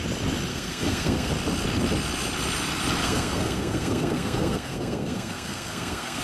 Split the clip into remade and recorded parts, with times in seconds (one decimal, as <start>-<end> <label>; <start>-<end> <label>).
0.0-0.5 recorded; 0.5-1.3 remade; 1.3-3.0 recorded; 3.0-6.2 remade